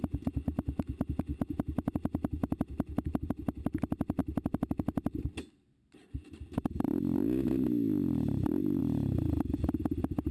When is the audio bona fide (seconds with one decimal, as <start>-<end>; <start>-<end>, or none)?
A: 0.0-10.3